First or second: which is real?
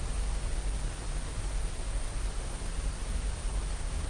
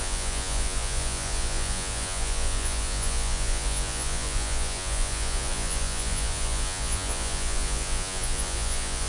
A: first